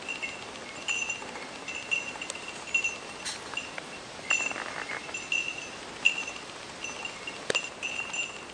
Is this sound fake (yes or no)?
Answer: no